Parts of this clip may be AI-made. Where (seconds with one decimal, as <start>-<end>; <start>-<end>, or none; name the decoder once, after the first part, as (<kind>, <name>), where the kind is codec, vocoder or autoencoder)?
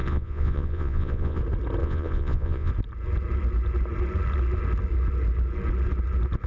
0.0-1.4 (vocoder, Vocos); 1.8-2.7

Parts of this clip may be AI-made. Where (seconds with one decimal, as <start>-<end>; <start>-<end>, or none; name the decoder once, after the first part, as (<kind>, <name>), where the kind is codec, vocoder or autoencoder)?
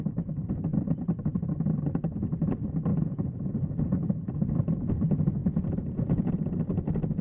2.9-4.3 (vocoder, Vocos); 5.4-6.3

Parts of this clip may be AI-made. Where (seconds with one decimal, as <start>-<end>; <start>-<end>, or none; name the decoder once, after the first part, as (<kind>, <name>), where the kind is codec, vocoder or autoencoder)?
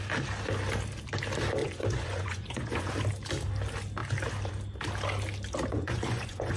1.6-2.9 (vocoder, Vocos); 5.7-6.6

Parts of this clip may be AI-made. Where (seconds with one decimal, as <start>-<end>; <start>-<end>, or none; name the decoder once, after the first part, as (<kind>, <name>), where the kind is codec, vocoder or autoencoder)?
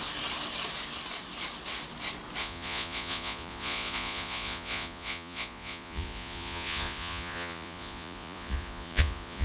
2.4-9.4 (vocoder, Vocos)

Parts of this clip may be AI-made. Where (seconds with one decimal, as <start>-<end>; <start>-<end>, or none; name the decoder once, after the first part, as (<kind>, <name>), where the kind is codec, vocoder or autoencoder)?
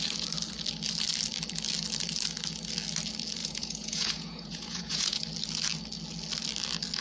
3.4-5.2 (vocoder, Vocos)